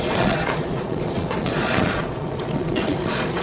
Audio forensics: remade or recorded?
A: remade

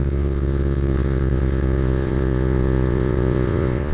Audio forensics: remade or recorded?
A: remade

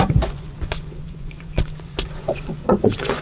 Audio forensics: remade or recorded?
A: remade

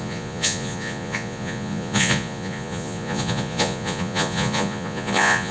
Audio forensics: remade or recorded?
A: remade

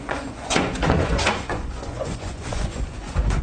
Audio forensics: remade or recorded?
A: remade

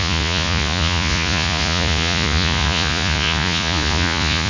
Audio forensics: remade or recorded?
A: remade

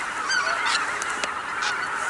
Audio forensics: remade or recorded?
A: recorded